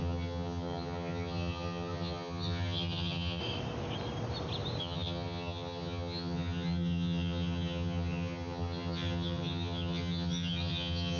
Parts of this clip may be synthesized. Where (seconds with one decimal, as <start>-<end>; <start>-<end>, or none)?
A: 0.0-3.4; 4.8-11.2